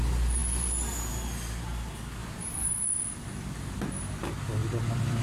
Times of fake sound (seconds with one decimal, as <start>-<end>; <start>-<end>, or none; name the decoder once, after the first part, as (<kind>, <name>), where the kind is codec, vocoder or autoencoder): 2.2-2.7 (vocoder, BigVGAN v2); 4.6-5.2

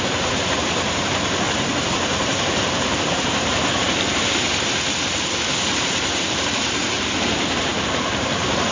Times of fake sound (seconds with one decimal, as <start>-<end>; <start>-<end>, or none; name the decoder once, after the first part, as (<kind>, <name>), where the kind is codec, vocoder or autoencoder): 0.0-8.7 (vocoder, BigVGAN v2)

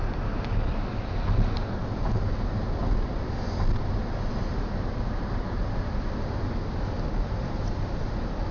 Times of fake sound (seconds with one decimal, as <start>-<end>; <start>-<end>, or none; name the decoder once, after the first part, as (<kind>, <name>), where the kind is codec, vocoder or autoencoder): none

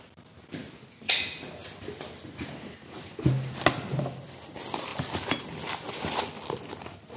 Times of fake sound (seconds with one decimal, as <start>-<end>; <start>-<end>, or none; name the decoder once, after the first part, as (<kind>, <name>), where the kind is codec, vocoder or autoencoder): none

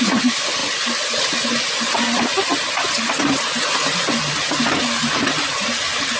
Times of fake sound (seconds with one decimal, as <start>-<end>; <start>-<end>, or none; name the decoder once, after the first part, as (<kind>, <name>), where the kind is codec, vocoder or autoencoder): none

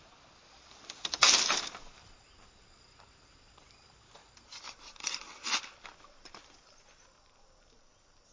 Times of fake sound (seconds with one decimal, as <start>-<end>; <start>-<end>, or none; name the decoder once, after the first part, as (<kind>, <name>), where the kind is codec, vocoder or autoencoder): 1.2-2.9 (vocoder, BigVGAN v2); 4.2-5.2

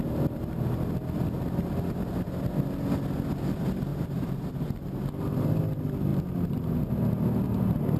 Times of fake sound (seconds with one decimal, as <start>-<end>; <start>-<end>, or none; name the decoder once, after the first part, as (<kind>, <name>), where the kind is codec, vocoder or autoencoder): 3.9-4.5 (vocoder, BigVGAN v2)